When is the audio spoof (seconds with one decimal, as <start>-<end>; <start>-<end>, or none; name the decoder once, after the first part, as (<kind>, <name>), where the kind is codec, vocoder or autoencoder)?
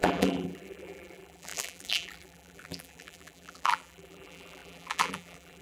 0.0-5.6 (vocoder, BigVGAN v2)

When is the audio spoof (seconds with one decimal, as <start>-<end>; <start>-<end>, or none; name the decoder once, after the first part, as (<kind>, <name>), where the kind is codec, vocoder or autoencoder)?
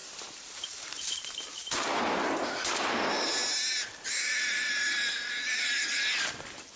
none